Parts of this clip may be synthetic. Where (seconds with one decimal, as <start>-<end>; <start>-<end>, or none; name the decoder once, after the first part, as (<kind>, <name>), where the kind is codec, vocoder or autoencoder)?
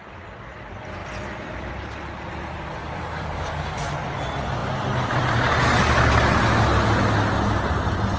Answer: 2.8-3.9 (codec, DAC)